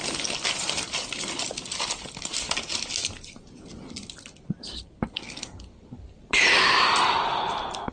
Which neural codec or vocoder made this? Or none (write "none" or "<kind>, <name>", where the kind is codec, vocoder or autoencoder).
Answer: vocoder, BigVGAN v2